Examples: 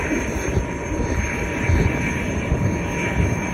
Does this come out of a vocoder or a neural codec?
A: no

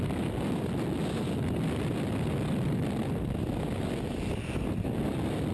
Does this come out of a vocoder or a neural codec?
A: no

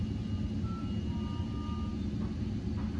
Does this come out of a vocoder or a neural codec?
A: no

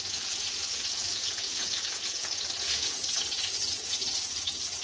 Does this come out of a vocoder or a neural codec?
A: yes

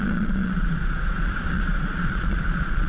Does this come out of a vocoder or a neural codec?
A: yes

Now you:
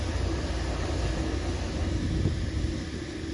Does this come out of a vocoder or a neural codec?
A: no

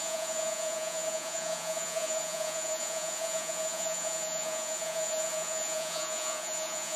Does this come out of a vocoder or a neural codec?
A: yes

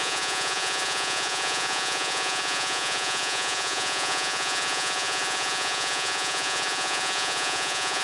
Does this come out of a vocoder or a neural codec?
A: yes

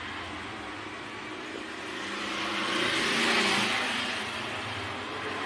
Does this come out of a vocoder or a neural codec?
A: no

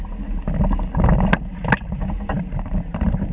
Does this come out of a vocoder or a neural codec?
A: no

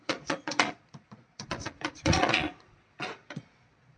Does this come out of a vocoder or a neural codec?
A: yes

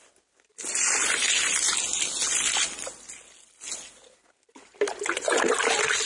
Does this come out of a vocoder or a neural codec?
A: no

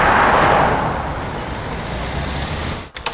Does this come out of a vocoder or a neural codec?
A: no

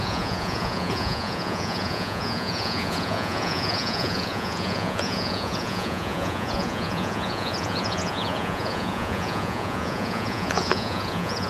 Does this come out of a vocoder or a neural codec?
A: yes